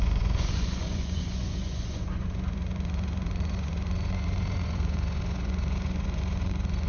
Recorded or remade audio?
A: remade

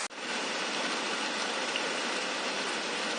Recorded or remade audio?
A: recorded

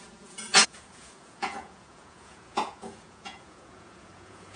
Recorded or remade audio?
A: remade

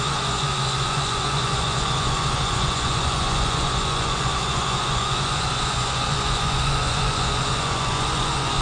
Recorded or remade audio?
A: remade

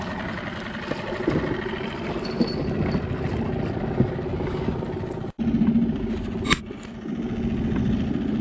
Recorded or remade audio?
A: recorded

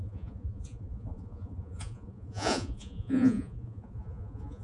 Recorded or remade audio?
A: remade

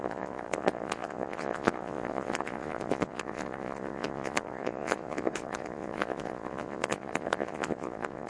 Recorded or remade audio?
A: remade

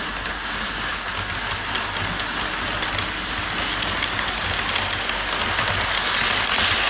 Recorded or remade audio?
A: recorded